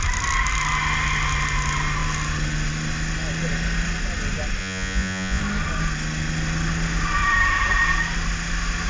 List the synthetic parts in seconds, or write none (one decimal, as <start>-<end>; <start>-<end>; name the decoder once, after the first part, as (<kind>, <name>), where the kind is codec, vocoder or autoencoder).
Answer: 4.6-5.4 (vocoder, Vocos)